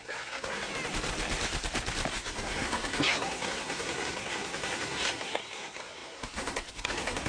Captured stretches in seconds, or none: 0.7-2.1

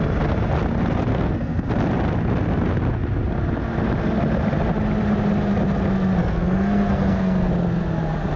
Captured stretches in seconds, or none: 0.0-1.1; 1.7-6.2; 7.5-8.4

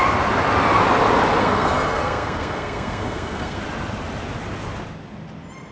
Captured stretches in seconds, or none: 0.0-1.4; 3.6-5.7

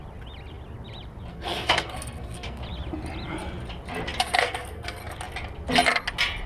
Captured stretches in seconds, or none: 0.0-1.3; 2.6-4.2; 5.0-6.5

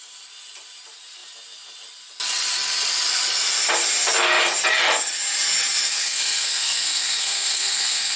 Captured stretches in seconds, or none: 0.0-5.9